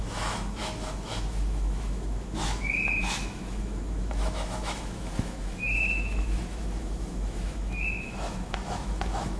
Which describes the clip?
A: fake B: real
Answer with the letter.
A